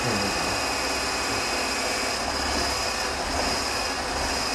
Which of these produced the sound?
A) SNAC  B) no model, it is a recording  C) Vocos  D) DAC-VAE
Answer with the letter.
B